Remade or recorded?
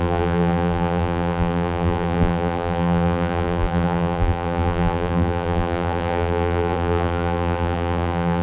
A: remade